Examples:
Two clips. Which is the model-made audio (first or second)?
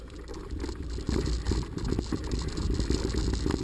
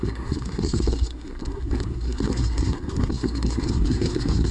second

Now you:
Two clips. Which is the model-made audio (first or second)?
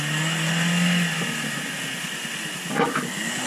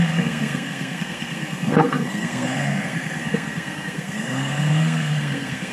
second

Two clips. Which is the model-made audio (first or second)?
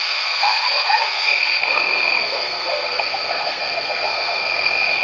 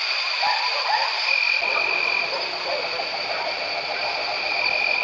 first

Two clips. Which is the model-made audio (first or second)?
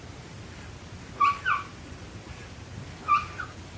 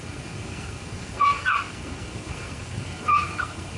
second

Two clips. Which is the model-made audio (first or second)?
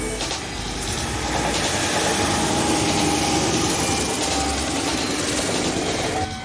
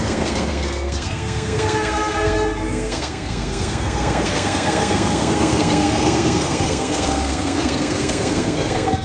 second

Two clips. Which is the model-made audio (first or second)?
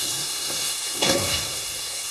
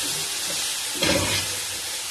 first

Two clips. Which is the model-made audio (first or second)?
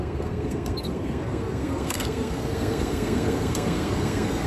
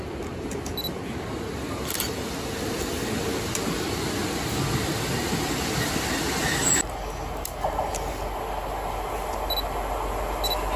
first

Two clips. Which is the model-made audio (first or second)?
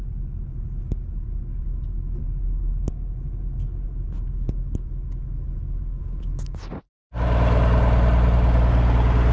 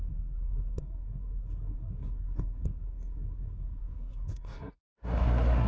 second